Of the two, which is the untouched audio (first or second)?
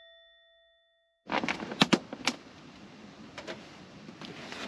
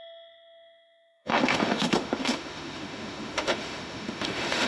first